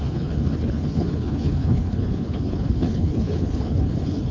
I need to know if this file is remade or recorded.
remade